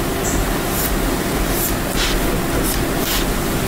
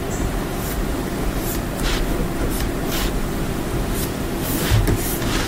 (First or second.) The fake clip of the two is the second